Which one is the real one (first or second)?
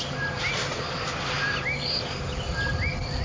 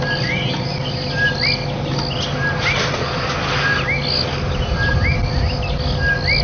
second